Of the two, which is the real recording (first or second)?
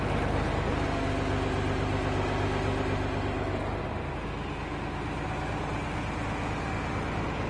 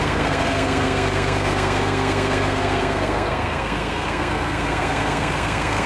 first